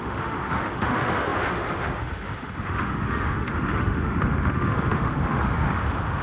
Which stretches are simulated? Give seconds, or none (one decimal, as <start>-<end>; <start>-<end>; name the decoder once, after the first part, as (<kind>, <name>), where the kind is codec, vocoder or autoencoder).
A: 0.0-6.2 (autoencoder, DAC-VAE)